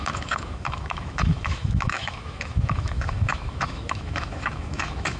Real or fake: fake